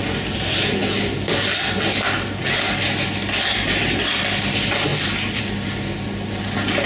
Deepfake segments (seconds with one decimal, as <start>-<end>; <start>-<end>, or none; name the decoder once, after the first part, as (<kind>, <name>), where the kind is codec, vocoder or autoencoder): none